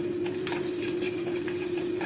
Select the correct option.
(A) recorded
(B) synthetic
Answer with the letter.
B